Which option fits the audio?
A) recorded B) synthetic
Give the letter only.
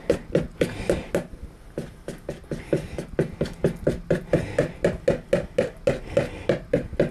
A